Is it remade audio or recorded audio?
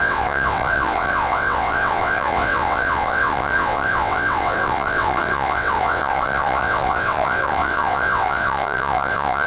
remade